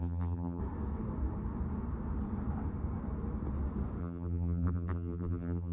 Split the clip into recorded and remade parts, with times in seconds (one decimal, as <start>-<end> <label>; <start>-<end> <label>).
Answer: 0.0-0.6 remade; 0.6-4.0 recorded; 4.0-5.7 remade